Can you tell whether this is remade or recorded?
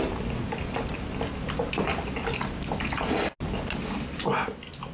recorded